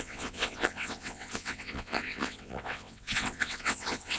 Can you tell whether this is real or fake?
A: fake